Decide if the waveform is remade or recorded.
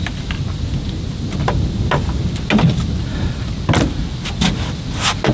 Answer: recorded